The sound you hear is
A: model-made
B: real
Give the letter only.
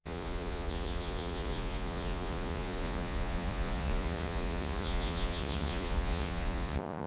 A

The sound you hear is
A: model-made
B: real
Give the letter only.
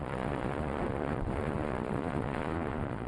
A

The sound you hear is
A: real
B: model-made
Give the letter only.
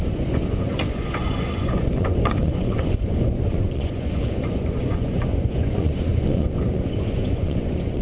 B